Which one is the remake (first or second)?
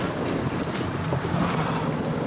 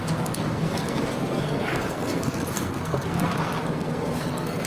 second